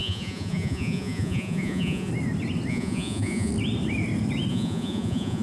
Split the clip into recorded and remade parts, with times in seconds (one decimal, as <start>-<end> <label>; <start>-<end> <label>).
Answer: 0.0-2.1 remade; 2.1-2.7 recorded; 2.7-3.5 remade; 3.5-4.5 recorded; 4.5-5.4 remade